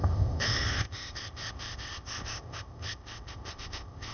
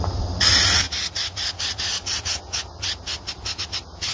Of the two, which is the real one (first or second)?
second